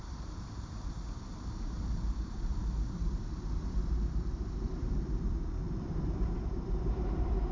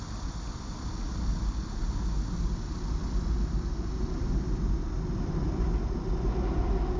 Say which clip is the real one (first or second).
second